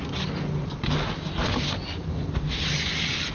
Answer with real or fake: real